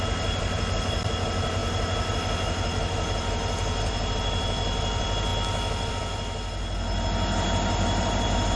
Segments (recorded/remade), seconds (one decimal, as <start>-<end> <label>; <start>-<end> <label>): 0.0-8.6 recorded